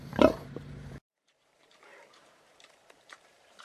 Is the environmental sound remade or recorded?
remade